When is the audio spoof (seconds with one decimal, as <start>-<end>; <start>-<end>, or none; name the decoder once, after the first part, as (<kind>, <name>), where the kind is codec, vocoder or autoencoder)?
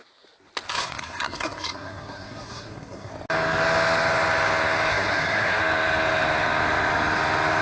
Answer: 0.7-3.1 (codec, SNAC); 4.9-5.6